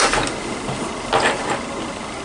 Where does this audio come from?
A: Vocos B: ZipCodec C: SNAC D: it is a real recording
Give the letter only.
D